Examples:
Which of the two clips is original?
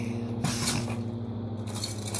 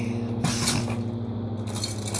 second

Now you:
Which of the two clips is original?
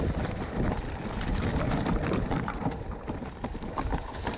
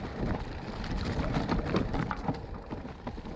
second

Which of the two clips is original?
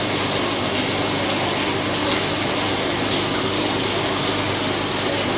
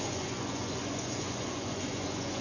first